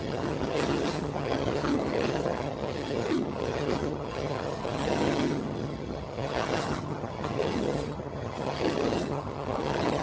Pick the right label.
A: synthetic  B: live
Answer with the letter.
A